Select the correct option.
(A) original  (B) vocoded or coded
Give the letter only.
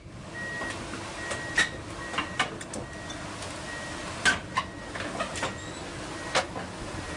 A